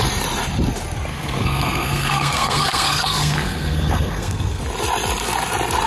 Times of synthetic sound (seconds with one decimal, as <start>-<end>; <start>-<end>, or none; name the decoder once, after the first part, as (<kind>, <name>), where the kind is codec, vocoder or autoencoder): 1.1-4.6 (codec, SNAC)